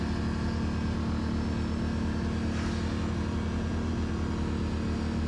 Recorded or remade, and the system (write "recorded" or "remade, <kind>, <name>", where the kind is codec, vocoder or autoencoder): recorded